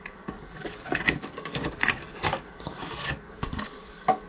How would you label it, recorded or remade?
remade